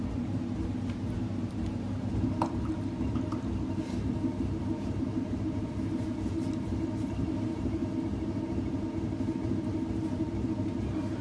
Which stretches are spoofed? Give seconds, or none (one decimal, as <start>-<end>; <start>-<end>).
0.0-7.8; 8.4-11.2